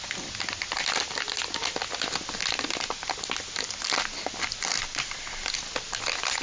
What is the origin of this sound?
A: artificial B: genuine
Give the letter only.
B